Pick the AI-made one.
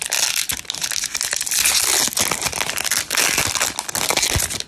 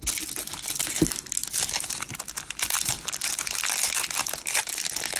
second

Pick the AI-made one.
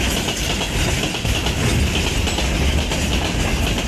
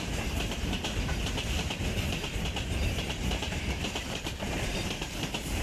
second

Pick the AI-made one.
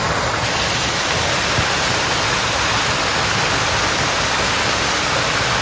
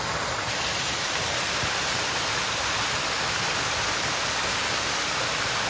second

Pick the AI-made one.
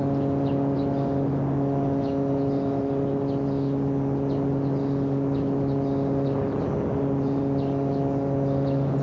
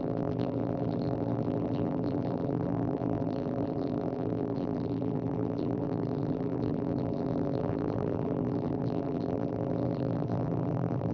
second